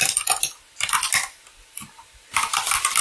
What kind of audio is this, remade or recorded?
recorded